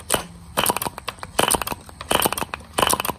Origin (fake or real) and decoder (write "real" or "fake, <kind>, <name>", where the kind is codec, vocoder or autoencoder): real